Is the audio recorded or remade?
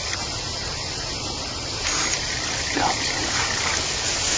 recorded